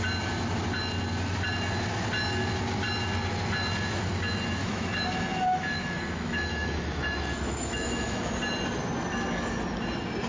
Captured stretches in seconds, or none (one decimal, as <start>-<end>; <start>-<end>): 0.0-4.6; 8.3-10.3